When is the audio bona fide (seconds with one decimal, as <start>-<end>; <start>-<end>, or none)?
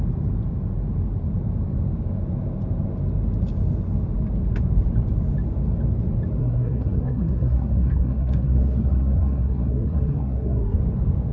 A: 0.0-6.4; 10.8-11.3